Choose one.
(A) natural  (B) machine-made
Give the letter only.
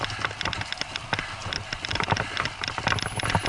A